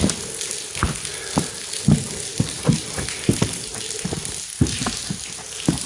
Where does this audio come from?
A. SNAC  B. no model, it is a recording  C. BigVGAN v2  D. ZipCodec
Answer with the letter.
B